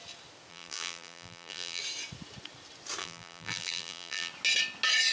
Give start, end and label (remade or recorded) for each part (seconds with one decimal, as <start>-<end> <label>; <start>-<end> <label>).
0.0-0.5 recorded; 0.5-1.8 remade; 1.8-3.0 recorded; 3.0-4.3 remade; 4.3-5.1 recorded